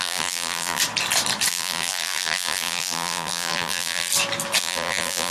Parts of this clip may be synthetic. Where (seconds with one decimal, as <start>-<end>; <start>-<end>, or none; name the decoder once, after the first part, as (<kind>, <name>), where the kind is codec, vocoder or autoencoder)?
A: 0.0-0.8 (vocoder, BigVGAN v2); 1.5-4.1; 4.6-5.3